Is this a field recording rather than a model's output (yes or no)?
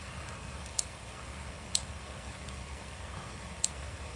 no